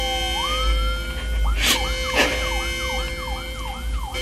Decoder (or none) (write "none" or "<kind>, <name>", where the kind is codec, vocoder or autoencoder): none